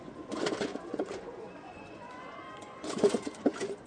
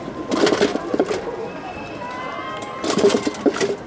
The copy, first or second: first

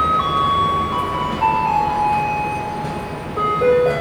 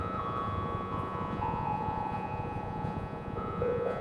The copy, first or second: second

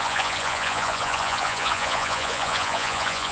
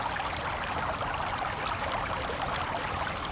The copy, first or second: first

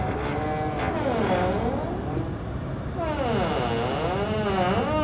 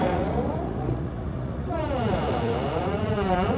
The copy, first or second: second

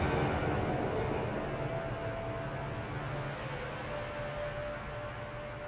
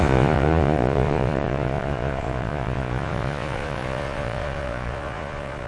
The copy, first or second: second